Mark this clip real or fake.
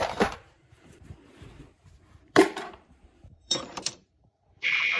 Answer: fake